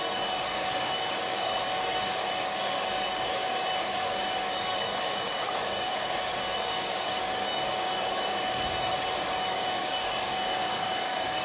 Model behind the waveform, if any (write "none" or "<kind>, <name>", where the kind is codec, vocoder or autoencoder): codec, DAC